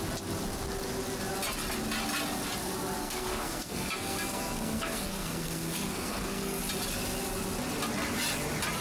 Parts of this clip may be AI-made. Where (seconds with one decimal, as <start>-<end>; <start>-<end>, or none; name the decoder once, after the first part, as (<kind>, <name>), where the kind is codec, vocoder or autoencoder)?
3.0-6.6 (codec, SNAC)